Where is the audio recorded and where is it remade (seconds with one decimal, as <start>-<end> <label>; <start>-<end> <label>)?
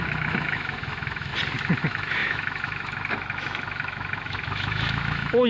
0.0-1.3 remade; 1.3-1.8 recorded; 1.8-5.5 remade